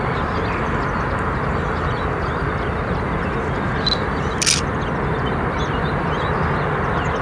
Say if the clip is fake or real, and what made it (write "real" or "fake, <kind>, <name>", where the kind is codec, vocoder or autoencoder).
real